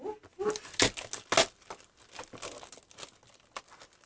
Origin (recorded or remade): recorded